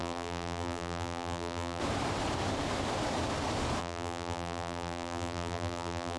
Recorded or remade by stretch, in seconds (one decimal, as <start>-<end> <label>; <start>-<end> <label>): 0.0-1.8 remade; 1.8-3.8 recorded; 3.8-6.2 remade